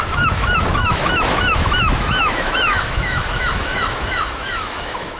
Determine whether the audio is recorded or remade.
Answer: remade